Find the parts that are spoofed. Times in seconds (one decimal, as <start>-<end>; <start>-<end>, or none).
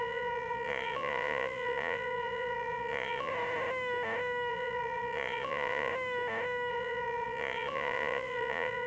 0.0-3.3; 4.5-5.9; 6.7-8.9